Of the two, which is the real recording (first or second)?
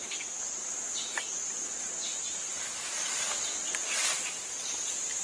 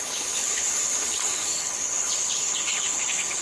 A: first